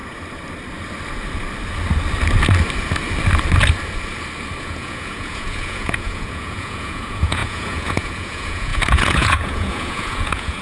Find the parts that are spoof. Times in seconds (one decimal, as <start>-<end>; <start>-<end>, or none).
4.6-10.6